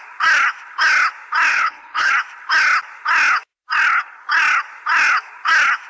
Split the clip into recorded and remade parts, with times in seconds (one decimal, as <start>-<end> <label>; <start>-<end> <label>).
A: 0.0-1.5 recorded; 1.5-2.1 remade; 2.1-5.9 recorded